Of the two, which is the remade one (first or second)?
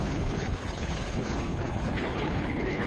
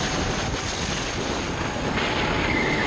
first